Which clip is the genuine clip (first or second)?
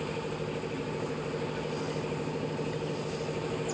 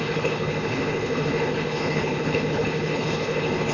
first